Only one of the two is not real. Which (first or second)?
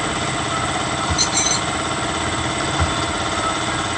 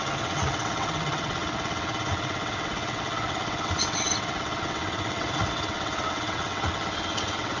second